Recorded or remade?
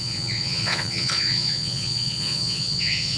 remade